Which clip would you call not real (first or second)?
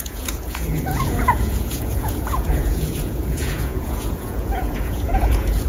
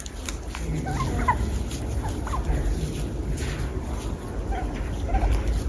first